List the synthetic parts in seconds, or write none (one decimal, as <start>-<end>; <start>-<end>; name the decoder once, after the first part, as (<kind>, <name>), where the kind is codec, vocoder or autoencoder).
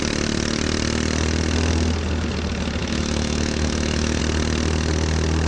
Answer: 2.8-4.2 (autoencoder, DAC-VAE)